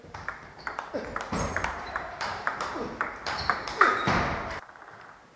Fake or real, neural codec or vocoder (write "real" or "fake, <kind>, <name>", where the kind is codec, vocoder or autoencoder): fake, vocoder, BigVGAN v2